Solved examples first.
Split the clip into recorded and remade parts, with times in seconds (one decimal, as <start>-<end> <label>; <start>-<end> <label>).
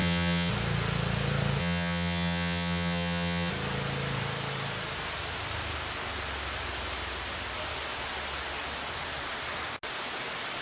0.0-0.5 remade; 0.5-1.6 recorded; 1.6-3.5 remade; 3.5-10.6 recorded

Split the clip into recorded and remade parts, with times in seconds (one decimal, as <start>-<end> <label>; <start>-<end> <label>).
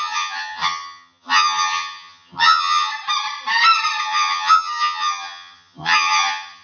0.0-2.9 remade; 2.9-4.0 recorded; 4.0-6.6 remade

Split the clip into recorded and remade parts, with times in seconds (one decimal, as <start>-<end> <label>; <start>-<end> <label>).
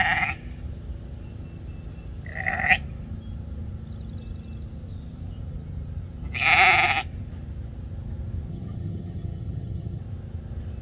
0.0-8.5 recorded; 8.5-10.0 remade; 10.0-10.8 recorded